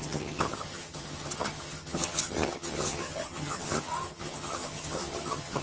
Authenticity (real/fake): fake